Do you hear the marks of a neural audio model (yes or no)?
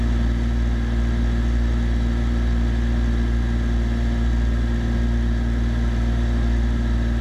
no